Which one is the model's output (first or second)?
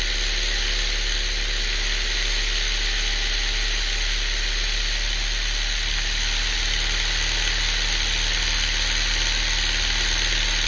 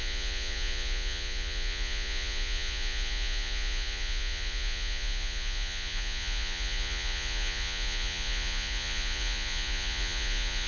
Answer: second